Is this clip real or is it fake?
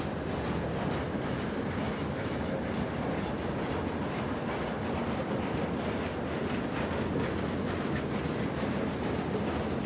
real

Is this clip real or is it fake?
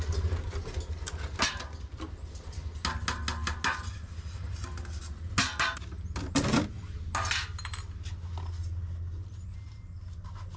real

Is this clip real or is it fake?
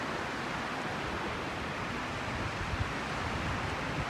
real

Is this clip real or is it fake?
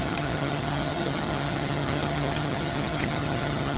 fake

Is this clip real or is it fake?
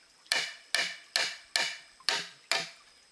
real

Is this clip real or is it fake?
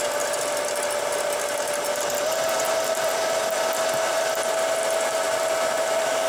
real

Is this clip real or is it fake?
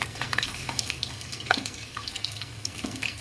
fake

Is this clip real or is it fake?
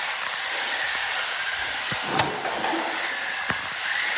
fake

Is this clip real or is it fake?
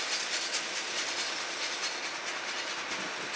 real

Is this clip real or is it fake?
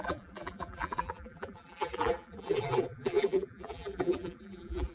fake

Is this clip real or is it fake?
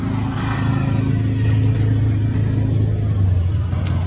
real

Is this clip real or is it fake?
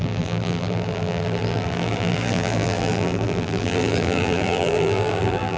fake